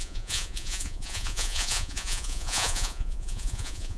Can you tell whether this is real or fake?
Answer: fake